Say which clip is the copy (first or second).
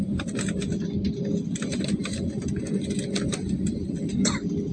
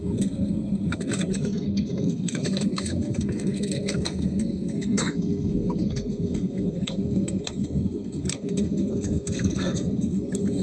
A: second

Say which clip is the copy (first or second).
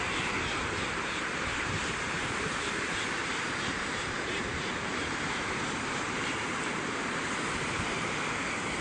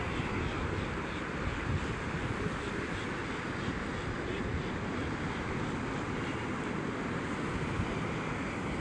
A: first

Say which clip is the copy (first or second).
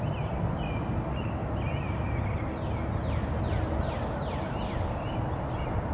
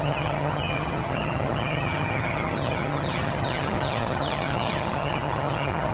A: second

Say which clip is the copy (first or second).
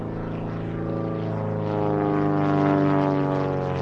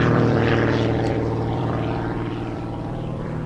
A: second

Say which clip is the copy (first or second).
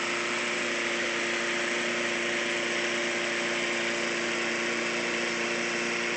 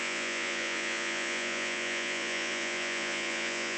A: second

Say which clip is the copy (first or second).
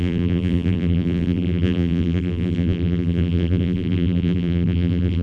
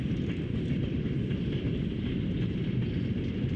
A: first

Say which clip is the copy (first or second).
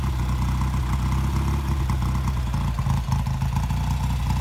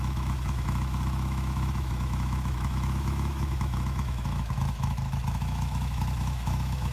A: second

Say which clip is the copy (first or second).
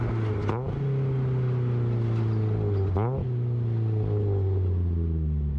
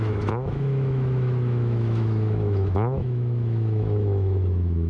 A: second